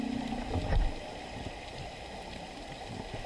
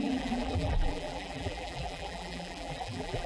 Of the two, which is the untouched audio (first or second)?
first